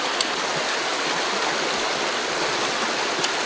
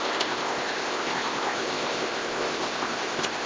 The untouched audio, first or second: first